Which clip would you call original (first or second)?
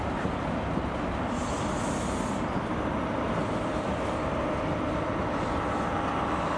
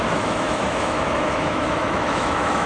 first